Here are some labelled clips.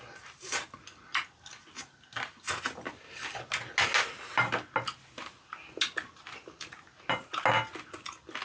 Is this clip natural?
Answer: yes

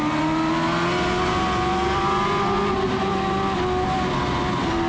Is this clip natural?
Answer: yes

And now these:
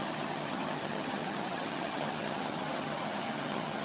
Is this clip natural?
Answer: no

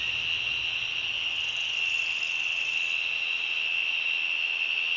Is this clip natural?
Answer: yes